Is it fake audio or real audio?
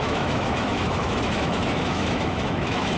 fake